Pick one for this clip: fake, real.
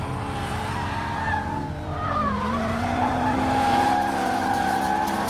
fake